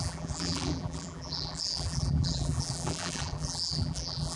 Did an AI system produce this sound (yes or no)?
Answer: yes